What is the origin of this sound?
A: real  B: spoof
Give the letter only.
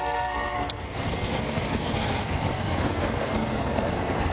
B